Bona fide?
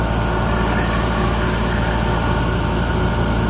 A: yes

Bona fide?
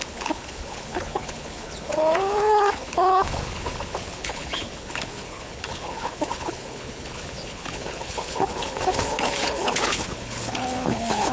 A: no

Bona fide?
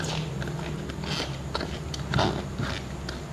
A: yes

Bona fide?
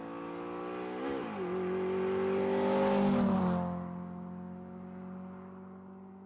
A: yes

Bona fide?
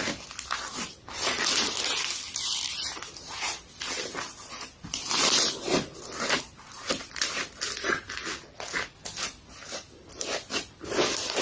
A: yes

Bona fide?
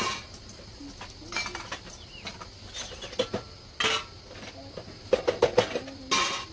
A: yes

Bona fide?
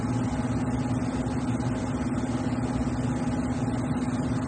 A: yes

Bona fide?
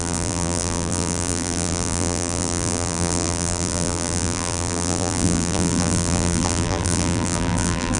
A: no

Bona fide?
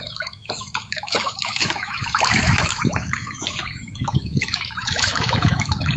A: no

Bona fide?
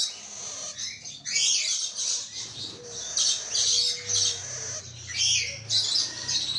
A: yes